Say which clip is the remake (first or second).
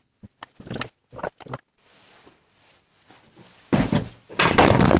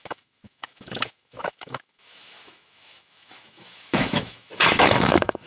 second